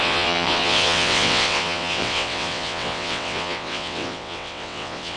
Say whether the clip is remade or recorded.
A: remade